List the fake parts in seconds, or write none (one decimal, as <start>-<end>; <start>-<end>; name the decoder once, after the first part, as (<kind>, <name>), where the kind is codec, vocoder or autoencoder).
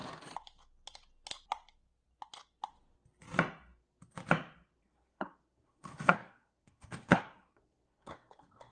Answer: 4.8-8.7 (codec, SNAC)